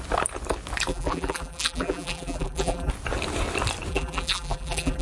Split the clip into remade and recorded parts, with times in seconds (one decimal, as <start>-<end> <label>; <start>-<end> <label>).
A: 0.0-0.9 recorded; 0.9-2.9 remade; 2.9-3.9 recorded; 3.9-5.0 remade